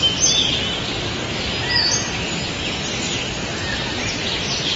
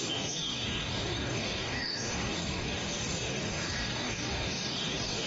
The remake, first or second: second